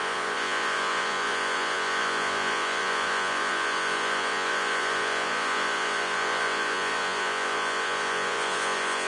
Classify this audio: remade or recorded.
remade